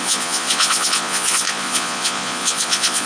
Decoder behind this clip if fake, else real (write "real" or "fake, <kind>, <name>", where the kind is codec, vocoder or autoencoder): fake, vocoder, Vocos